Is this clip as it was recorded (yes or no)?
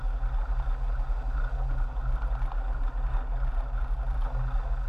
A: yes